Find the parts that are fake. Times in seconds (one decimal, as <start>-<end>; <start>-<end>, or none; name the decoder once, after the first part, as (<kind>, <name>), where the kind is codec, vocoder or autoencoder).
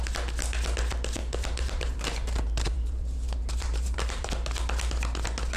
1.2-4.3 (vocoder, BigVGAN v2)